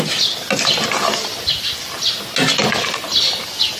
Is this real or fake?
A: real